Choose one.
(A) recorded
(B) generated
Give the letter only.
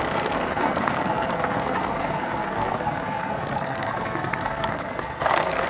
B